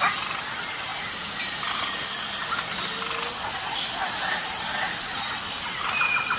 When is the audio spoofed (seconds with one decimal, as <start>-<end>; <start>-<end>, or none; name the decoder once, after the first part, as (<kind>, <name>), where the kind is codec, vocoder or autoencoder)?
none